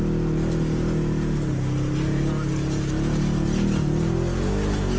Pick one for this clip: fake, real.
real